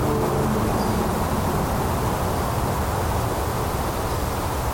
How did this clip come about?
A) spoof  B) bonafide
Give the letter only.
B